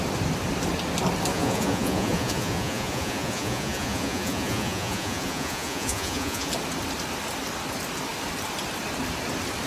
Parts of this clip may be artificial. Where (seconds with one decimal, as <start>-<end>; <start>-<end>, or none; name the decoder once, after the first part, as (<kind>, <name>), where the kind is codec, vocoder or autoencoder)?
1.3-6.5 (vocoder, Vocos)